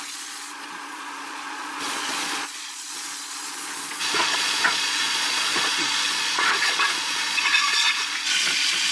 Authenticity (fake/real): fake